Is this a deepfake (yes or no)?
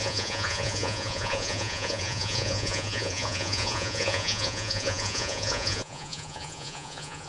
yes